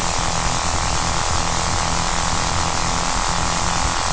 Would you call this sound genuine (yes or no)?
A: yes